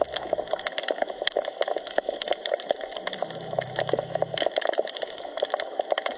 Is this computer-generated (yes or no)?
yes